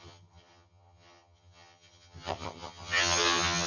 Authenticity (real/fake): fake